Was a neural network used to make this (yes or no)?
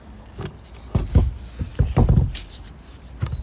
no